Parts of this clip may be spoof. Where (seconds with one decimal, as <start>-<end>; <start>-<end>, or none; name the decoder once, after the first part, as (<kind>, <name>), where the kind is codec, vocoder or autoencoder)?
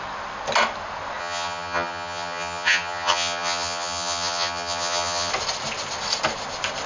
1.2-5.3 (vocoder, HiFi-GAN)